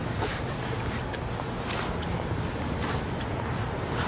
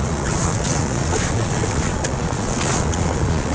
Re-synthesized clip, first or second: second